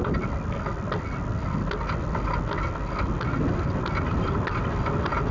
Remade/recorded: recorded